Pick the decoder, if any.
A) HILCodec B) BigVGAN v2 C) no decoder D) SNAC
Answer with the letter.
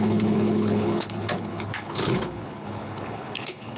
A